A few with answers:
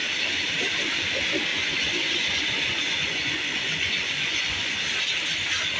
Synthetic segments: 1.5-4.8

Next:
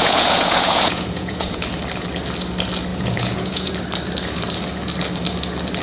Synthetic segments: 0.0-1.6; 2.9-3.7

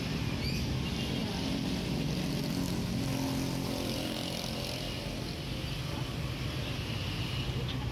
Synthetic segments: 1.2-1.9

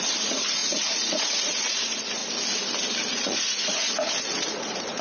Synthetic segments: 0.0-2.2; 3.1-5.0

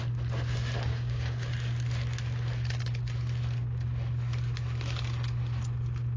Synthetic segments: 0.9-1.5